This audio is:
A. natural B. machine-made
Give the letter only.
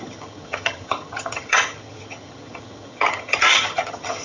B